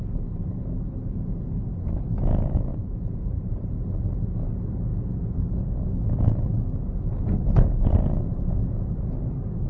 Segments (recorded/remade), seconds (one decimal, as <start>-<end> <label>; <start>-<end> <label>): 0.0-2.7 recorded; 2.7-3.8 remade; 3.8-9.7 recorded